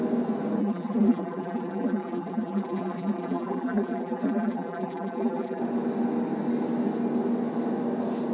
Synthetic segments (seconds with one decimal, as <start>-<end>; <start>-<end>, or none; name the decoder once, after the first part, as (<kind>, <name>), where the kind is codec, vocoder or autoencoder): 0.6-5.6 (vocoder, BigVGAN v2)